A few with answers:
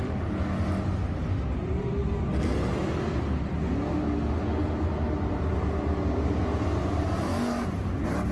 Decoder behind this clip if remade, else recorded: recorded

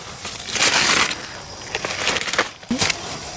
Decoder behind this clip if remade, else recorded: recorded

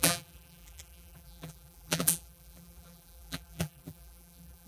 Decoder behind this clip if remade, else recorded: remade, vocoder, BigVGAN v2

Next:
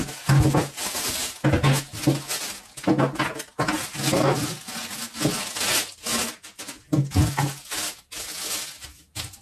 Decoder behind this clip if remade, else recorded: recorded